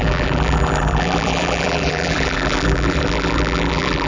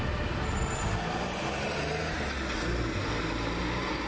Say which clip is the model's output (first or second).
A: first